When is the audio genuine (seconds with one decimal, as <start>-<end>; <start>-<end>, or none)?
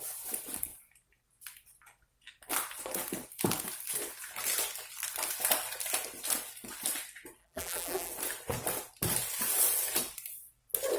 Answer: 0.0-7.4; 8.1-11.0